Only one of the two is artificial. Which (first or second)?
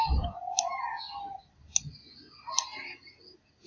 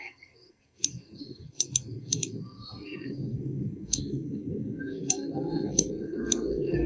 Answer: second